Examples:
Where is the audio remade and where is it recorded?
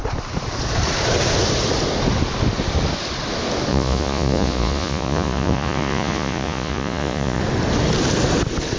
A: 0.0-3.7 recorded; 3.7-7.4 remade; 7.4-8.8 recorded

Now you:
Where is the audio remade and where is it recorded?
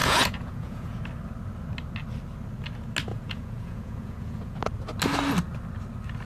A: 0.0-1.0 remade; 1.0-3.1 recorded; 3.1-4.6 remade; 4.6-6.2 recorded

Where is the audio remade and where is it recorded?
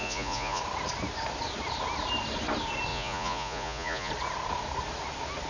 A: 0.0-0.6 remade; 0.6-2.9 recorded; 2.9-4.1 remade; 4.1-5.5 recorded